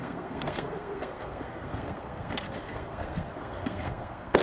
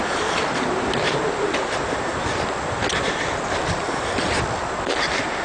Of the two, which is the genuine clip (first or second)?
second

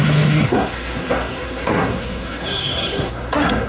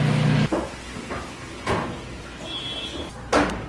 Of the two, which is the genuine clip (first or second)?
second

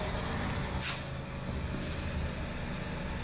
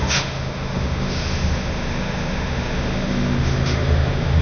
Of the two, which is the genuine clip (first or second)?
first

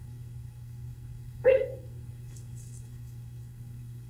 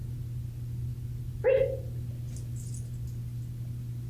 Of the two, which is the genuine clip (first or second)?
second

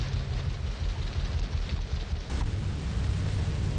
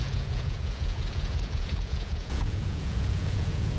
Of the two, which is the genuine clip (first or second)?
first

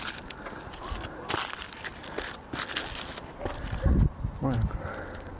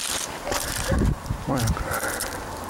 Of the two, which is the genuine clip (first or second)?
first